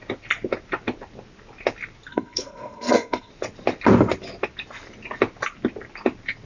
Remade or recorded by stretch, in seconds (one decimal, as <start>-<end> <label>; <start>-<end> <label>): 0.0-2.1 recorded; 2.1-3.3 remade; 3.3-6.5 recorded